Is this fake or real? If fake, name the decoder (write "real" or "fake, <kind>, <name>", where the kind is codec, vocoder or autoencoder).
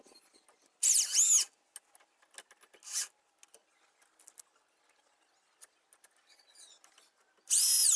real